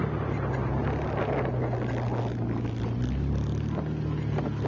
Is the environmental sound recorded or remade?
recorded